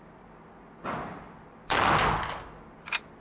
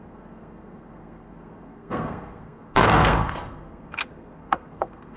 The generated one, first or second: second